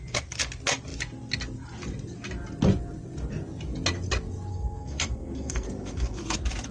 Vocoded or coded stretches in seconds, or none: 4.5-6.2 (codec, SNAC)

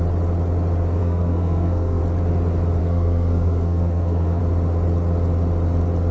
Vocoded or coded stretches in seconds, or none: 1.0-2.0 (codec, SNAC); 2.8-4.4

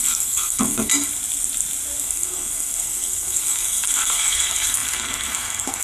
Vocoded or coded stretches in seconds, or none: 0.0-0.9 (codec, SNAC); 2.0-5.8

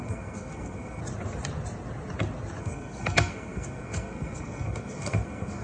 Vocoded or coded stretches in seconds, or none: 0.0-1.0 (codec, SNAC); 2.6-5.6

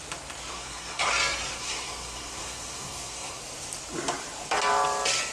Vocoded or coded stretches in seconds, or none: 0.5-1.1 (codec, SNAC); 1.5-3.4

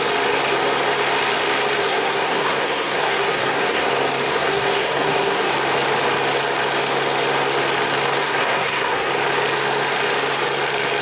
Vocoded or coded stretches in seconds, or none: 1.8-3.9 (codec, SNAC); 4.3-5.5; 8.2-9.1

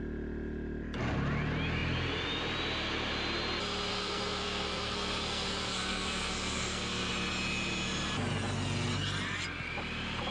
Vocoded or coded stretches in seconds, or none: 3.9-7.1 (codec, SNAC)